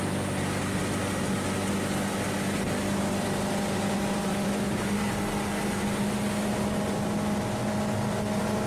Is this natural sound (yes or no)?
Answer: yes